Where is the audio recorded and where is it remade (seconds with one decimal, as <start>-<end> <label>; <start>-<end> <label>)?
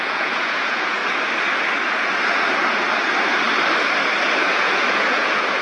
0.0-1.0 remade; 1.0-4.4 recorded; 4.4-5.6 remade